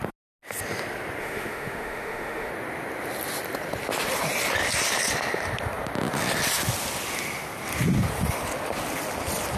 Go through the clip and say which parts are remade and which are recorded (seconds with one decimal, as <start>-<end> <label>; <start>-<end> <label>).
0.0-1.2 recorded; 1.2-2.5 remade; 2.5-9.6 recorded